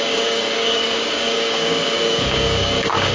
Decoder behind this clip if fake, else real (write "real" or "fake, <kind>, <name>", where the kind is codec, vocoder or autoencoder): fake, codec, DAC